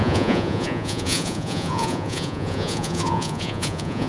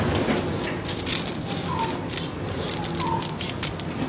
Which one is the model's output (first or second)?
first